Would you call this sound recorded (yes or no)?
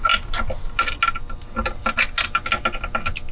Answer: yes